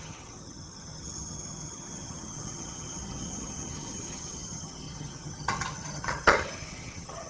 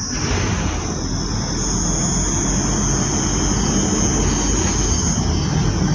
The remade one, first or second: first